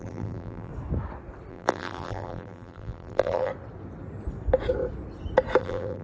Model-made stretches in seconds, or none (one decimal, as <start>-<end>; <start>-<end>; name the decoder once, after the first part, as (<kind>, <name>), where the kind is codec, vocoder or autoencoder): 0.0-0.7 (vocoder, BigVGAN v2); 1.5-3.5; 5.6-6.0